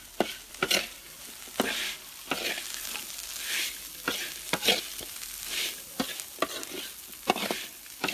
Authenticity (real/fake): real